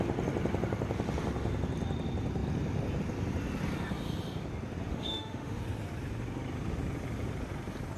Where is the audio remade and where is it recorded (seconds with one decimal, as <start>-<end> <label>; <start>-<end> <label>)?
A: 0.0-4.9 recorded; 4.9-5.6 remade; 5.6-8.0 recorded